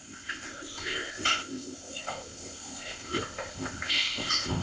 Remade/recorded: remade